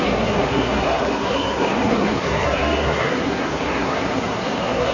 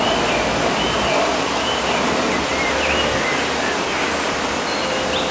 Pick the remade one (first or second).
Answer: first